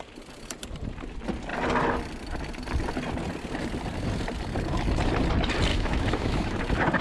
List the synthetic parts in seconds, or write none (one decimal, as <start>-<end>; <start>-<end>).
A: 5.7-6.6